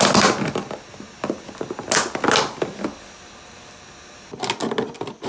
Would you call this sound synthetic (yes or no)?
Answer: no